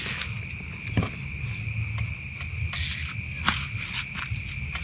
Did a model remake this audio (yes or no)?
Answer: no